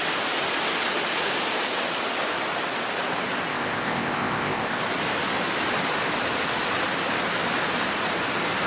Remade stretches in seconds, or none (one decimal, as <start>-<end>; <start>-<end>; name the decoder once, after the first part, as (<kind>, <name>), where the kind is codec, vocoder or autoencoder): 3.5-4.8 (codec, ZipCodec)